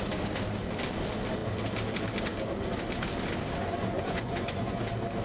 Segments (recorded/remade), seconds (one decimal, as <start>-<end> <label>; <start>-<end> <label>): 0.0-3.6 recorded; 3.6-4.8 remade; 4.8-5.2 recorded